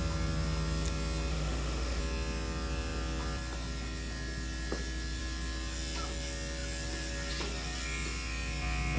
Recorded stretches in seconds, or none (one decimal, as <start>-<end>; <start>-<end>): 0.0-1.3; 2.0-9.0